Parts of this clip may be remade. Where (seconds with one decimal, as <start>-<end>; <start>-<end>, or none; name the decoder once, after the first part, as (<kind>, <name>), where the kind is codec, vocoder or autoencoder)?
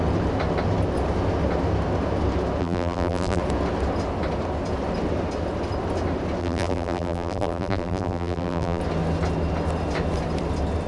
2.6-3.4 (vocoder, BigVGAN v2); 6.4-8.8